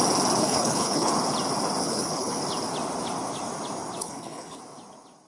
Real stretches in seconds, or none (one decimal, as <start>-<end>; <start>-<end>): 0.0-0.4; 1.1-1.8; 2.4-4.0; 4.6-5.3